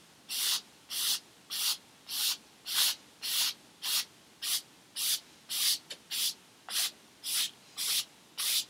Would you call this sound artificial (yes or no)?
no